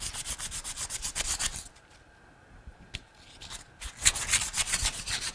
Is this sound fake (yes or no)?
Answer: no